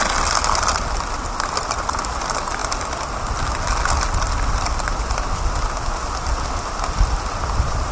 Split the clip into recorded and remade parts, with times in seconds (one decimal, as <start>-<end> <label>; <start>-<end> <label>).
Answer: 0.0-7.9 recorded